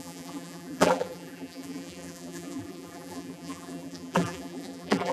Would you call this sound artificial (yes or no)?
yes